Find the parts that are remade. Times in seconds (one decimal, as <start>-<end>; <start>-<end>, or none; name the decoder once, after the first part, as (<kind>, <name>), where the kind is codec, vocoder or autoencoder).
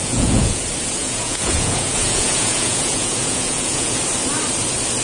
0.0-0.6 (vocoder, Vocos); 1.0-4.0